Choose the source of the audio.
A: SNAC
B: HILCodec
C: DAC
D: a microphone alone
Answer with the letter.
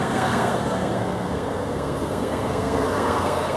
A